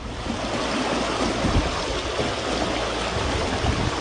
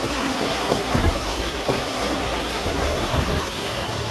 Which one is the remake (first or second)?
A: second